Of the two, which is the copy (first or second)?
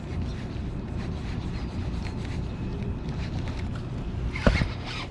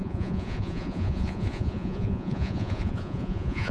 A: second